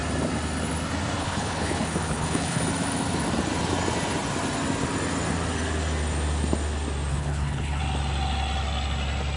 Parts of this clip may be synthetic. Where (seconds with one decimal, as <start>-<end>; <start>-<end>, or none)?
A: 1.2-2.6; 7.1-7.8